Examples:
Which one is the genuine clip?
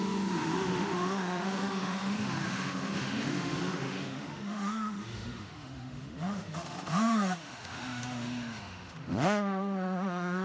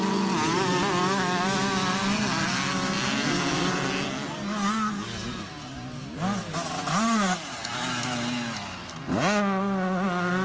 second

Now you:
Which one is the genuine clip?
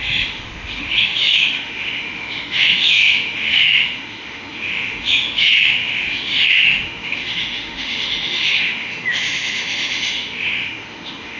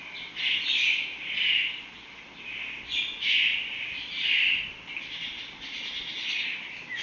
second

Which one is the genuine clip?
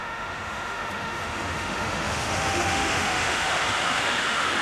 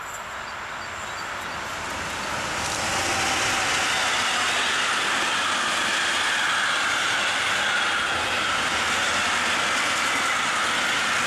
second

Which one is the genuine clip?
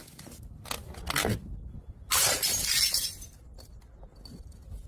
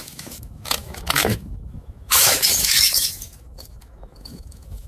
first